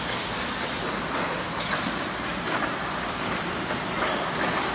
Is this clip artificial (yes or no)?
no